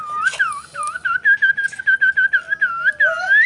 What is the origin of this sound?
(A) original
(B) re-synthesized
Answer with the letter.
A